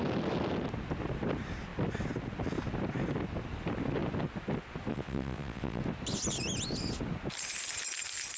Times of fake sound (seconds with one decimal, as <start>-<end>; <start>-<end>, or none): 4.9-5.8